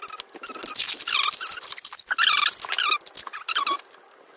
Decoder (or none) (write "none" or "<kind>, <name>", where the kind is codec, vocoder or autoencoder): none